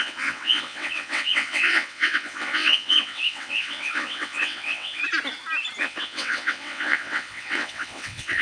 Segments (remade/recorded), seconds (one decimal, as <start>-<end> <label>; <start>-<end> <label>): 0.0-5.0 remade; 5.0-5.8 recorded; 5.8-8.4 remade